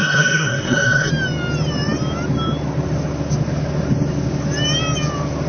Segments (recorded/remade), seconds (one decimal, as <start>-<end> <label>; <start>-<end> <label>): 0.0-1.1 remade; 1.1-5.5 recorded